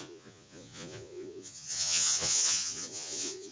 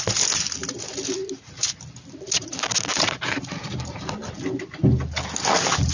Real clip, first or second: second